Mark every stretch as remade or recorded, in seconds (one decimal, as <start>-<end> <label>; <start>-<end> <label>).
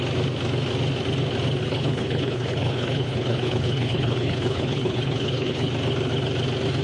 0.0-1.6 recorded; 1.6-5.7 remade; 5.7-6.8 recorded